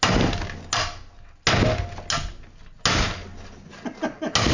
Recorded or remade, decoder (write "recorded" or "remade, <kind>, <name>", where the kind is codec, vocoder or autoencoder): recorded